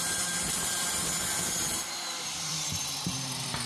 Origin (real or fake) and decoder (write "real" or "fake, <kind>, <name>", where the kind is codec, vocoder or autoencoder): fake, vocoder, BigVGAN v2